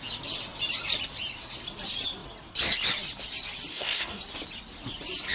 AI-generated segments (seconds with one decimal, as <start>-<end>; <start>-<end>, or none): 3.7-4.2